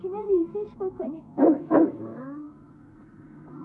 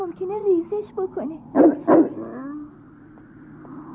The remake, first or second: first